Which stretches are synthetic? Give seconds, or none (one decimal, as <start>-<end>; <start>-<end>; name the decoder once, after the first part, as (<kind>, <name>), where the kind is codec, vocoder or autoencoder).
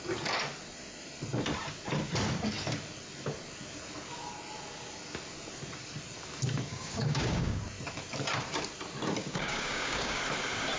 6.7-7.6 (codec, DAC); 9.2-10.2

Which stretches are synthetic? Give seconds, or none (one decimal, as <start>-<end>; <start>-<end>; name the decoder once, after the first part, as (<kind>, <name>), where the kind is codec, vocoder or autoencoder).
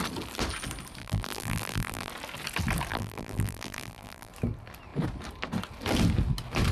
1.0-2.1 (vocoder, BigVGAN v2); 2.9-4.3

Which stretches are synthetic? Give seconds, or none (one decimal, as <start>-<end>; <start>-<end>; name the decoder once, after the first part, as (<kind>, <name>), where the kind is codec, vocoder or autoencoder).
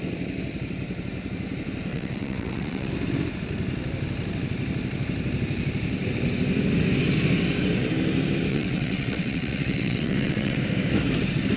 1.9-2.9 (vocoder, WaveNeXt); 8.5-10.6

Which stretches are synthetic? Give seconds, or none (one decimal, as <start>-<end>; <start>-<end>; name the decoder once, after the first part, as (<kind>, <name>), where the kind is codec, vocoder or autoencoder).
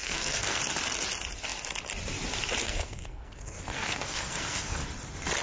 0.0-0.6 (codec, SNAC); 2.6-4.8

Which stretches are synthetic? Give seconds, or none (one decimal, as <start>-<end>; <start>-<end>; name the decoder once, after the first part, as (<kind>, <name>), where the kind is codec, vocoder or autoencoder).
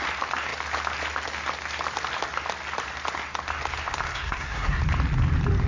4.1-4.8 (codec, SNAC)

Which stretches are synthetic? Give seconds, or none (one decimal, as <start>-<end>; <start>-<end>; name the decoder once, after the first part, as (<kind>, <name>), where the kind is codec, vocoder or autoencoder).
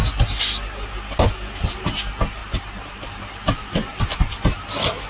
2.4-3.2 (vocoder, BigVGAN v2)